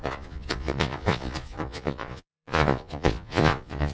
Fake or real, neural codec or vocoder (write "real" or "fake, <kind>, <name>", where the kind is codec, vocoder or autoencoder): fake, vocoder, Vocos